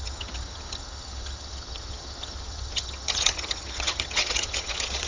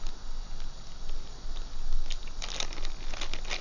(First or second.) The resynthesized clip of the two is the first